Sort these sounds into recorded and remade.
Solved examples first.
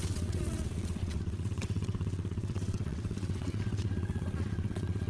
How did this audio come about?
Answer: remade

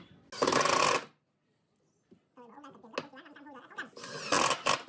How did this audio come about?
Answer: recorded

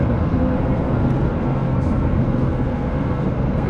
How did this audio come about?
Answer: remade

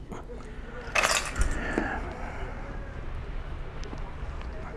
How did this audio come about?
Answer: recorded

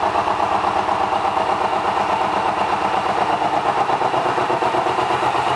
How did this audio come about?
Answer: recorded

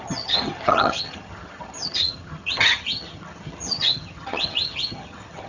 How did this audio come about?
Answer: remade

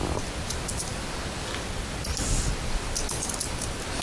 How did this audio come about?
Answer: recorded